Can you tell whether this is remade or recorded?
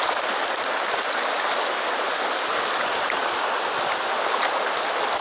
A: recorded